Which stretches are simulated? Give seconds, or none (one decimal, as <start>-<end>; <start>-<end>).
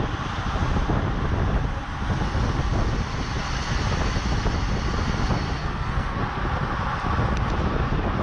5.6-6.2